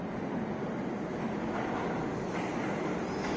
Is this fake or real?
real